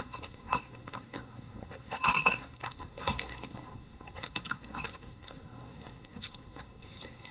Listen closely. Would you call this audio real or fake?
fake